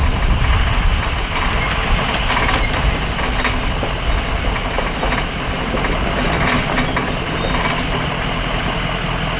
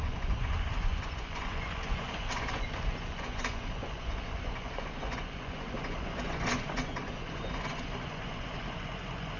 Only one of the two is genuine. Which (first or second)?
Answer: first